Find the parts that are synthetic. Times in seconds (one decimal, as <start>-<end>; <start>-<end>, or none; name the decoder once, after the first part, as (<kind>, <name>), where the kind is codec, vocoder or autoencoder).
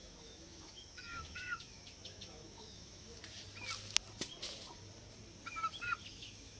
0.0-3.2 (autoencoder, DAC-VAE); 6.1-6.6